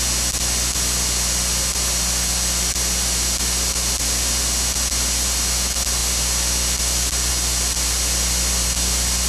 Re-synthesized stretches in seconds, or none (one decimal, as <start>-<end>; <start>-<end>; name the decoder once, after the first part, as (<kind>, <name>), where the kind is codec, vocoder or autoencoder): none